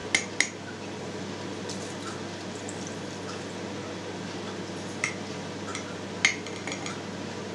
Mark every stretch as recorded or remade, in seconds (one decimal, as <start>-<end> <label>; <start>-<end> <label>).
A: 0.0-7.5 recorded